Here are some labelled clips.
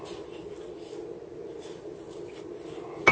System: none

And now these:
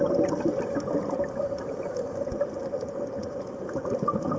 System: none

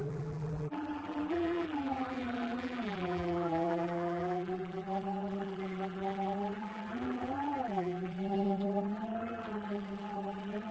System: vocoder, BigVGAN v2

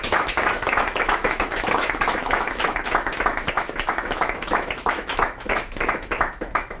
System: autoencoder, DAC-VAE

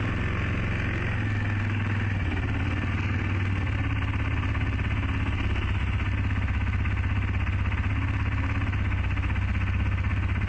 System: none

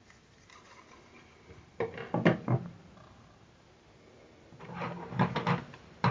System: none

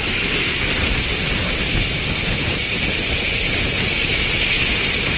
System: none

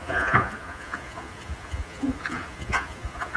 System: vocoder, Vocos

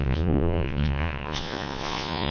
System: vocoder, Vocos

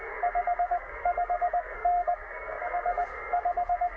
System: codec, SNAC